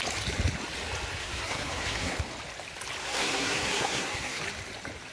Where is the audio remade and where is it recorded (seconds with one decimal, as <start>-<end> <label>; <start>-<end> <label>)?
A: 0.0-1.2 recorded; 1.2-2.2 remade; 2.2-3.0 recorded; 3.0-4.4 remade; 4.4-5.1 recorded

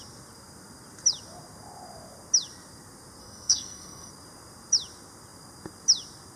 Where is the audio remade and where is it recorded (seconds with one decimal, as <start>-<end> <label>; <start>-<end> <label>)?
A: 0.0-3.2 recorded; 3.2-4.1 remade; 4.1-6.4 recorded